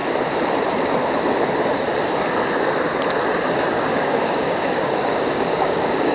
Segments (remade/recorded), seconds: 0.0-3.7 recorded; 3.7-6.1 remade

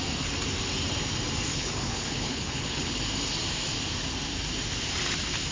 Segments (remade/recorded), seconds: 0.0-1.5 recorded; 1.5-3.0 remade; 3.0-5.5 recorded

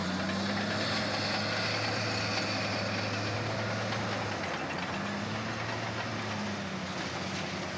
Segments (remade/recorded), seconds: 0.0-7.8 recorded

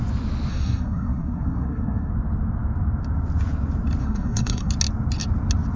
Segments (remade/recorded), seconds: 0.0-0.5 recorded; 0.5-2.1 remade; 2.1-4.0 recorded; 4.0-4.7 remade; 4.7-5.8 recorded

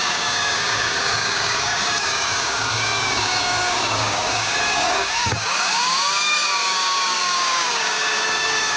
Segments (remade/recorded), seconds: 0.0-8.8 remade

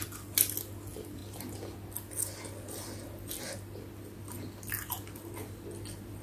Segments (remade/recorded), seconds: 0.0-6.2 recorded

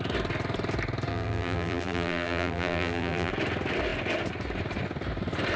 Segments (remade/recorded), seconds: 0.0-1.1 recorded; 1.1-3.3 remade; 3.3-5.6 recorded

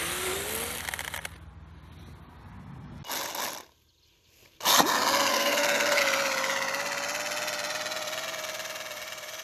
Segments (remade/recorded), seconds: 0.0-5.3 recorded; 5.3-6.0 remade; 6.0-9.4 recorded